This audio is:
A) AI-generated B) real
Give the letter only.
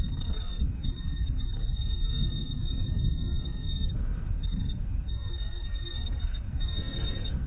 A